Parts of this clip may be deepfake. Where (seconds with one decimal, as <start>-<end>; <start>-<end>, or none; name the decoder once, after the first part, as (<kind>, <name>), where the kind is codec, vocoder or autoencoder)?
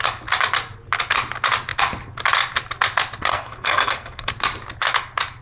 3.3-4.3 (codec, SNAC)